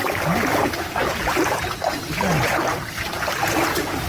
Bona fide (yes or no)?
no